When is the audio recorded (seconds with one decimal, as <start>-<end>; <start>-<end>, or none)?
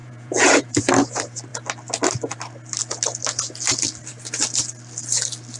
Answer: 0.9-5.6